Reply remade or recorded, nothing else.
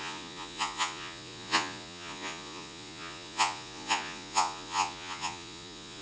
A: remade